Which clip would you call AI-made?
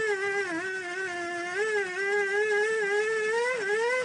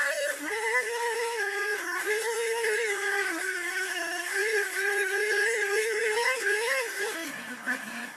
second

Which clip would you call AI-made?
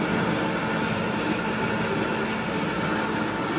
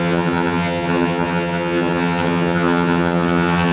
second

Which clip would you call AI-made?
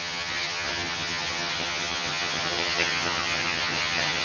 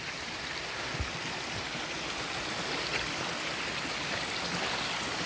first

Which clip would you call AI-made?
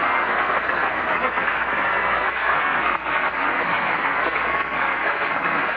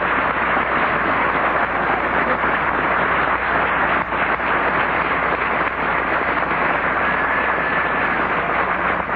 first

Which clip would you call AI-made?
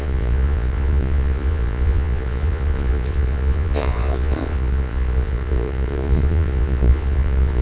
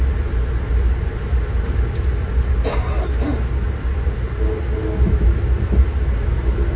first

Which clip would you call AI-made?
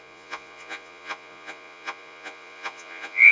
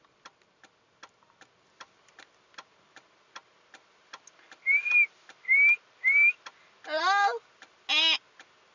first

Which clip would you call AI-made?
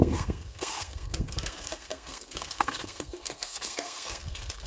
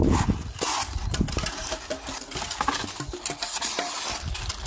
first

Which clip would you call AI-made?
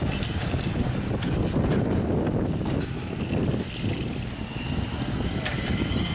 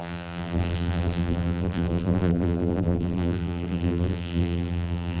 second